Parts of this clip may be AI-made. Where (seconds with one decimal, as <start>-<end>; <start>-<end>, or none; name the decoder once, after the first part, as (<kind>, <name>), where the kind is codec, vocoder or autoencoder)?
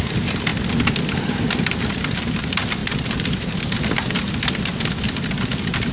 none